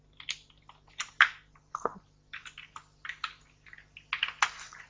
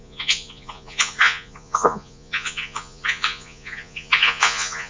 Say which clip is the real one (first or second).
first